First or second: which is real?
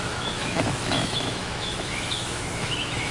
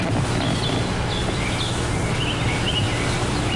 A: second